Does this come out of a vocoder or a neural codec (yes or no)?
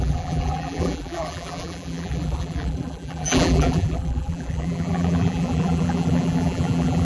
yes